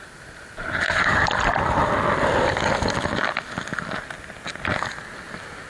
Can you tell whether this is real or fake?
real